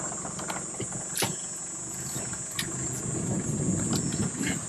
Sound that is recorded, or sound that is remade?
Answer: recorded